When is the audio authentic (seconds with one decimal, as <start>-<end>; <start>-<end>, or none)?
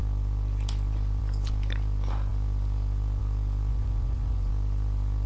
0.0-3.7; 4.5-5.3